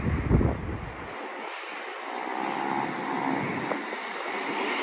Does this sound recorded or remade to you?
recorded